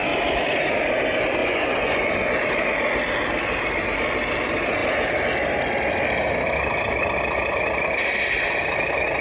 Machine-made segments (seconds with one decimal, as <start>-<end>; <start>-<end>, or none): 1.4-2.0